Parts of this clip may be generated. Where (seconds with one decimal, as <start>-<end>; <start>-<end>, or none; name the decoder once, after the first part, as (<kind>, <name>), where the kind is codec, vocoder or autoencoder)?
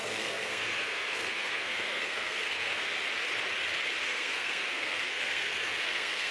0.0-3.0 (codec, SNAC); 4.0-6.3